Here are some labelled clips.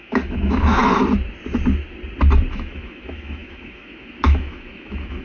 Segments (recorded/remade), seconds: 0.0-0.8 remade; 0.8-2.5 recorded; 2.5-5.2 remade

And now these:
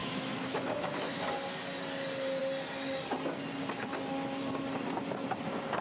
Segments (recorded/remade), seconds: 0.0-1.2 remade; 1.2-5.8 recorded